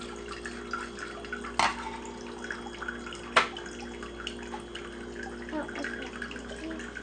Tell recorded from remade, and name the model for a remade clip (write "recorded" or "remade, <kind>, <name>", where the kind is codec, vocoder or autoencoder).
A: recorded